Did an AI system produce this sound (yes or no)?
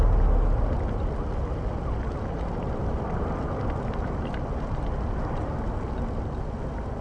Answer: no